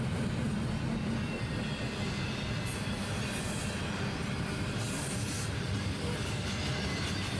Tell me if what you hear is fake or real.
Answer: real